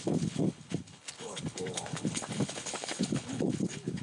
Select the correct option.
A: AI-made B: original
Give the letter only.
A